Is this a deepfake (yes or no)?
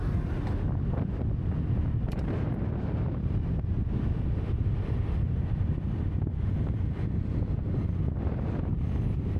no